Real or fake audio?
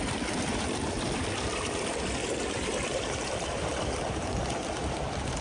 fake